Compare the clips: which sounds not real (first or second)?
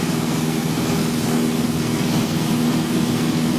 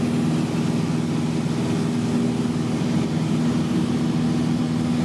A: first